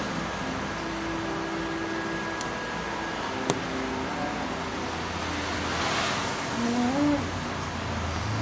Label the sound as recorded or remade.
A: recorded